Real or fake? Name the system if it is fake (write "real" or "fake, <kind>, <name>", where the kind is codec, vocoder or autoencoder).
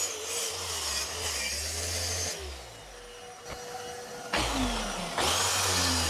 real